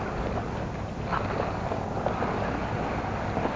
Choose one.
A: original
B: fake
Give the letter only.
A